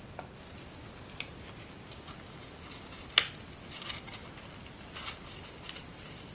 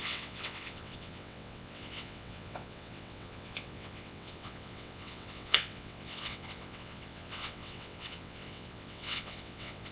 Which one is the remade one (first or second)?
second